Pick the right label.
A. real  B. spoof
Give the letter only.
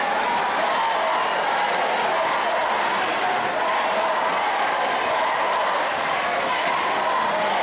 A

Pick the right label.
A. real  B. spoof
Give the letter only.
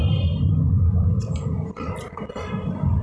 A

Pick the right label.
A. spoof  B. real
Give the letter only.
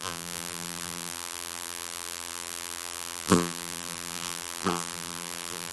A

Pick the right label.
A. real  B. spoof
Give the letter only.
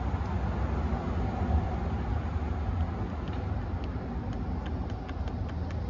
A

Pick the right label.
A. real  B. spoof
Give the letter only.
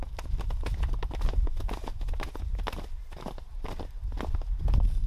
A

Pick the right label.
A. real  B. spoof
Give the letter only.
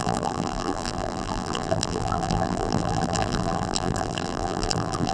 B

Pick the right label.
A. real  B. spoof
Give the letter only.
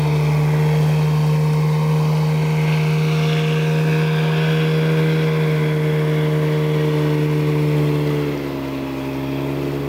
A